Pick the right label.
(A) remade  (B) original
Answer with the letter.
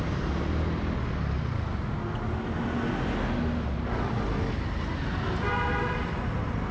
B